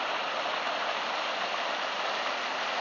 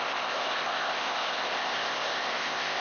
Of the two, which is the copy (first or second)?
second